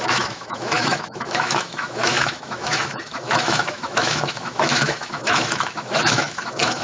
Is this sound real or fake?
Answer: fake